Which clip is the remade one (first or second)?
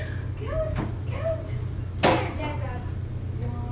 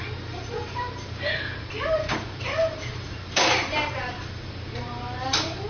second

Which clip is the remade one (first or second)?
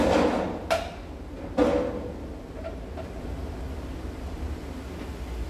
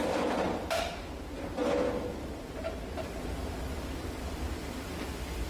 second